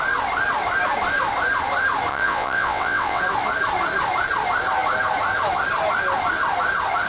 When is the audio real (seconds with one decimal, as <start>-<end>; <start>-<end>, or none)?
0.0-2.1; 3.2-7.1